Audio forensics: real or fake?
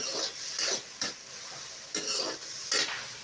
real